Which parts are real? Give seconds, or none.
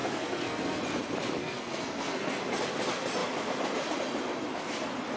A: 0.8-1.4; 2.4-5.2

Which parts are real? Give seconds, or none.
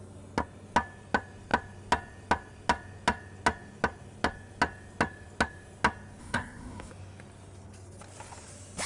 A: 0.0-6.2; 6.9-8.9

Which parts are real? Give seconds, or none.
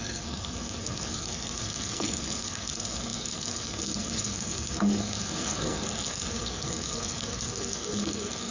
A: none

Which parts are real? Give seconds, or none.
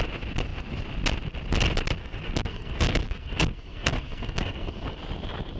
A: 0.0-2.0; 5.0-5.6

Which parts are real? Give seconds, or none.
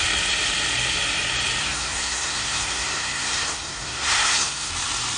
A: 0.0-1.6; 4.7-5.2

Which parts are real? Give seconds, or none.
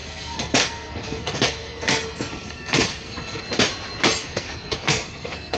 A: 3.4-4.2